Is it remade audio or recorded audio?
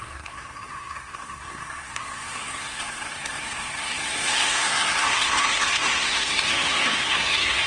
remade